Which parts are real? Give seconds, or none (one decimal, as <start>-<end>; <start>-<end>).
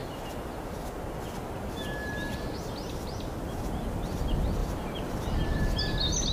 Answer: 0.0-4.6; 5.6-6.3